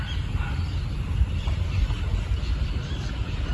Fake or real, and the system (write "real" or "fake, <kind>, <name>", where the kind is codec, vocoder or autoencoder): real